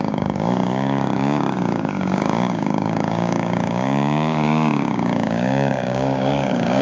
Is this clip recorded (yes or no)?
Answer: no